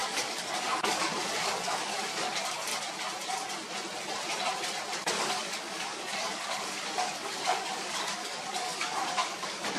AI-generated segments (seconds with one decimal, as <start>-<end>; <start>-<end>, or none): 0.0-2.7; 5.1-9.8